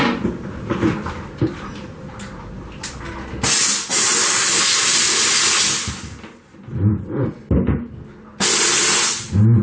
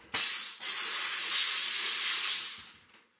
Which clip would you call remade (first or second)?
second